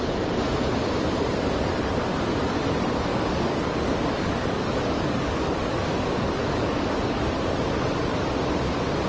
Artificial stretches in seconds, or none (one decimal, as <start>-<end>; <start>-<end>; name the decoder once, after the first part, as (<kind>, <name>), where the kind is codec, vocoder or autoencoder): 3.1-7.2 (codec, DAC)